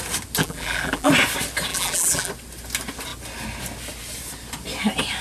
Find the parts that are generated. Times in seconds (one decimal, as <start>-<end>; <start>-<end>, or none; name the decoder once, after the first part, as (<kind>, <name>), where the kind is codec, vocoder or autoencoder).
0.4-1.1 (vocoder, BigVGAN v2); 1.7-2.3